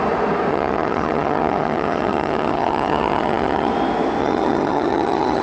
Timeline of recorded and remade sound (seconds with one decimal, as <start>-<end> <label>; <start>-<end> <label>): 0.0-0.5 recorded; 0.5-3.7 remade; 3.7-4.2 recorded; 4.2-5.4 remade

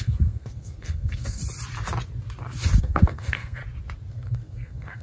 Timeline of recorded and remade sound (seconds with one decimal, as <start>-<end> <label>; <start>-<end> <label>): 0.0-1.4 remade; 1.4-2.8 recorded; 2.8-3.6 remade; 3.6-4.1 recorded; 4.1-5.0 remade

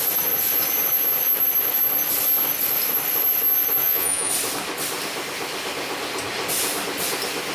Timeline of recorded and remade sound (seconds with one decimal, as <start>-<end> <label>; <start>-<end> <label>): 0.0-3.8 recorded; 3.8-4.3 remade; 4.3-7.5 recorded